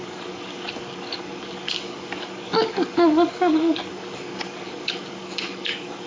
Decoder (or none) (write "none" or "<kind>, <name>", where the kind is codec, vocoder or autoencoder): codec, DAC